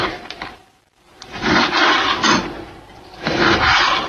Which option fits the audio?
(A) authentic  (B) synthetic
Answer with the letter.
B